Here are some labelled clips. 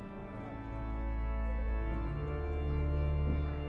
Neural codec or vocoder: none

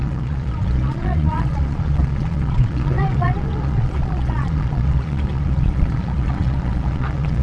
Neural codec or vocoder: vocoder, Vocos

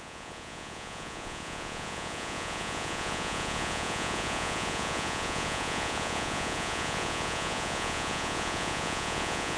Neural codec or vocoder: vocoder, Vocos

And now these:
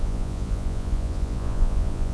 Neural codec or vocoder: vocoder, Vocos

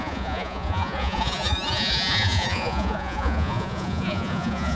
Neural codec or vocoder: vocoder, Vocos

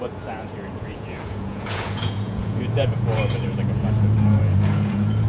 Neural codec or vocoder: vocoder, Vocos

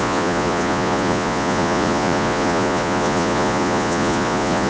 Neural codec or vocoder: vocoder, Vocos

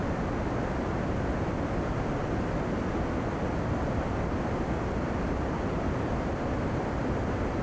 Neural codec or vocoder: none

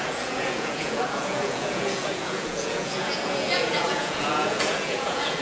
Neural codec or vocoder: vocoder, Vocos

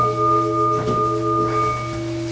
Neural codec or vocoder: none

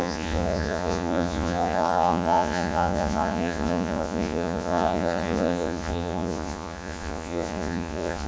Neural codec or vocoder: vocoder, Vocos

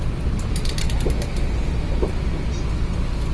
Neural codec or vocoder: none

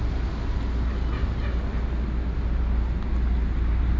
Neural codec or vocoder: none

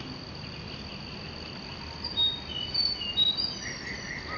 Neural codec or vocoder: none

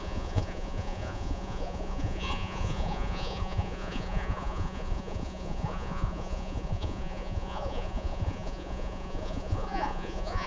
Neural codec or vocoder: vocoder, Vocos